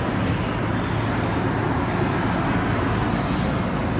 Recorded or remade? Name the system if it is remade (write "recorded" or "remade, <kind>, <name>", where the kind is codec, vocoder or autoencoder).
recorded